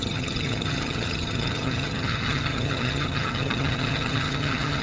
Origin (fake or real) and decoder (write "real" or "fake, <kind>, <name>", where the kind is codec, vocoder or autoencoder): fake, vocoder, HiFi-GAN